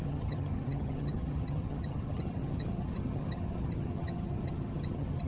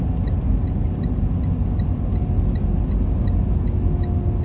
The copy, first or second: first